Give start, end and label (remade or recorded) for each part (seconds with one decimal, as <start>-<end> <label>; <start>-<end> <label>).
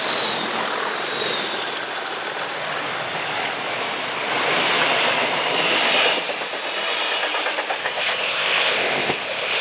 0.0-7.8 recorded; 7.8-9.6 remade